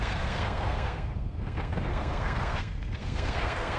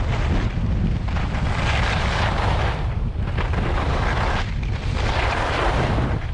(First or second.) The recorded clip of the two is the second